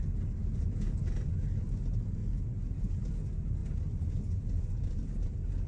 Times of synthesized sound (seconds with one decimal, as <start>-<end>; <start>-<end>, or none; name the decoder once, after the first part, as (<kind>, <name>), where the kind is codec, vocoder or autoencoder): 0.4-1.0 (vocoder, Vocos); 2.2-2.8